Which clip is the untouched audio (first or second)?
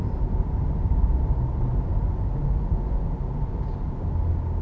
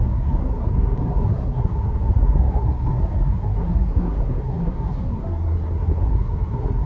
first